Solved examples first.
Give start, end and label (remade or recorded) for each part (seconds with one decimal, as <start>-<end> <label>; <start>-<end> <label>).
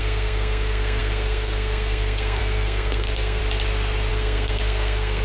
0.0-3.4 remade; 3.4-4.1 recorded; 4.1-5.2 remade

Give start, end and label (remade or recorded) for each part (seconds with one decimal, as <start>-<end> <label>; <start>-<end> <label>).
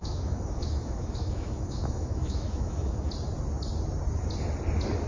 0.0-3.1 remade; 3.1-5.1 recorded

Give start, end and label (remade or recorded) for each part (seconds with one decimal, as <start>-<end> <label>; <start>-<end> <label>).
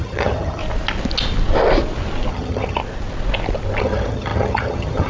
0.0-0.6 remade; 0.6-2.3 recorded; 2.3-2.8 remade; 2.8-3.8 recorded; 3.8-5.1 remade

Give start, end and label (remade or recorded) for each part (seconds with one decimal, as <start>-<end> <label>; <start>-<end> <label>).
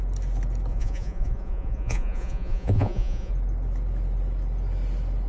0.0-0.7 recorded; 0.7-3.3 remade; 3.3-5.3 recorded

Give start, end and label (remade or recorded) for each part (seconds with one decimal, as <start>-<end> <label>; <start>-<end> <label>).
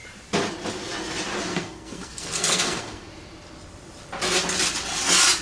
0.0-1.5 recorded; 1.5-3.1 remade; 3.1-5.4 recorded